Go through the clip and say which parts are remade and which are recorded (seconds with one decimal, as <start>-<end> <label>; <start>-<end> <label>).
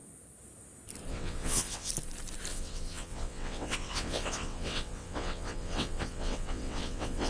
0.0-1.1 recorded; 1.1-1.9 remade; 1.9-2.5 recorded; 2.5-7.3 remade